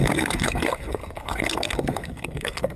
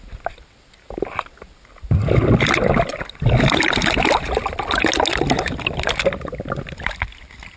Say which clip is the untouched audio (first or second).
second